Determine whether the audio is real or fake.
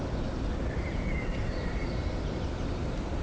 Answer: fake